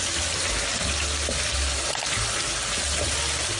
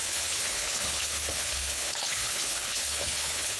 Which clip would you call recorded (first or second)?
first